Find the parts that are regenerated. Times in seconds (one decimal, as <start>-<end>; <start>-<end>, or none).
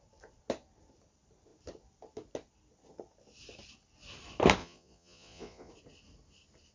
4.6-5.7